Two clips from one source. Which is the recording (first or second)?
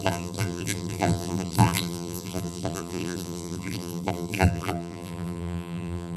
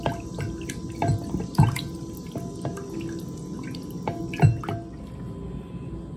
second